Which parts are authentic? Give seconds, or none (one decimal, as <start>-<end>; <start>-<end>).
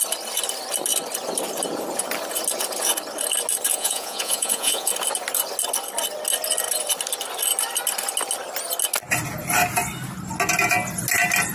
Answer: 0.0-3.7; 4.9-11.5